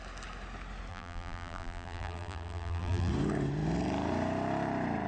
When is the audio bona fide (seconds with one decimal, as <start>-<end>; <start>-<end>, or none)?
0.0-0.9; 3.1-5.1